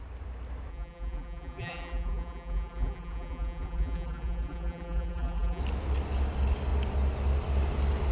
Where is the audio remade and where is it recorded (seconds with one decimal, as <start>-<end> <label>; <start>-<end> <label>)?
0.0-0.7 recorded; 0.7-5.6 remade; 5.6-8.1 recorded